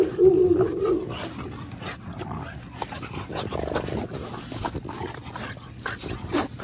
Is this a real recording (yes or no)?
yes